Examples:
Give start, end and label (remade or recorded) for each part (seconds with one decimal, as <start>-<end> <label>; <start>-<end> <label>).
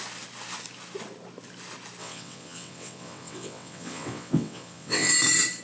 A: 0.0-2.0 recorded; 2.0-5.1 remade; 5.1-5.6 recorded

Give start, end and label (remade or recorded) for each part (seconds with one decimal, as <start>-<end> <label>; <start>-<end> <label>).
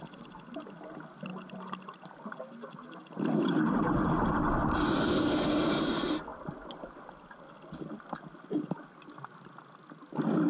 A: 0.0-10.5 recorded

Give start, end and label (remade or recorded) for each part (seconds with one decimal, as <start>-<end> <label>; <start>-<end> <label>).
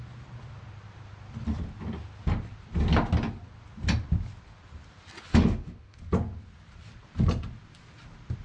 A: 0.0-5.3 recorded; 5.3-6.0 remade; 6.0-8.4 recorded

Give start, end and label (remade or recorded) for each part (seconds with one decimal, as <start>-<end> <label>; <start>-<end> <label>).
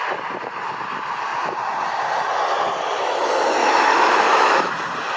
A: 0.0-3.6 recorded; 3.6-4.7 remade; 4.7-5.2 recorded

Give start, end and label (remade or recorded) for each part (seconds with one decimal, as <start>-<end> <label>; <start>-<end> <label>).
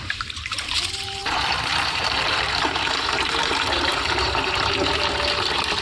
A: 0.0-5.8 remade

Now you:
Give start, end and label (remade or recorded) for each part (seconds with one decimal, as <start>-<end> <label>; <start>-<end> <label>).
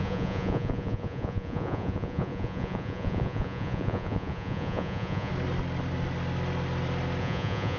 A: 0.0-5.3 remade; 5.3-7.2 recorded; 7.2-7.8 remade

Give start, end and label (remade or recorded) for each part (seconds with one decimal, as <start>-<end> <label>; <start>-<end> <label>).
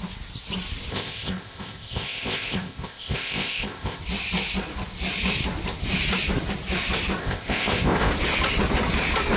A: 0.0-0.9 recorded; 0.9-4.0 remade; 4.0-7.2 recorded; 7.2-8.1 remade; 8.1-9.4 recorded